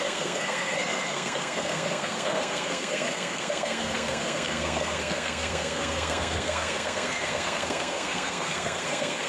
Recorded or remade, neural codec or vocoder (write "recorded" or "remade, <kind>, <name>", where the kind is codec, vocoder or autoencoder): remade, codec, SNAC